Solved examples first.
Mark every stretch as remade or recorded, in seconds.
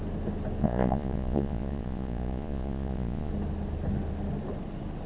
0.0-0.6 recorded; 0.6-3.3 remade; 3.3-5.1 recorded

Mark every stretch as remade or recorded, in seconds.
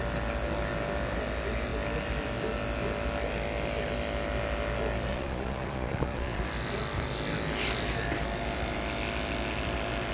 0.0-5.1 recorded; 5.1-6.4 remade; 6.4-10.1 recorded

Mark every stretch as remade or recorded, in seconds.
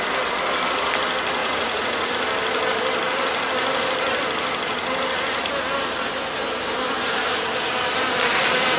0.0-1.4 recorded; 1.4-2.1 remade; 2.1-8.8 recorded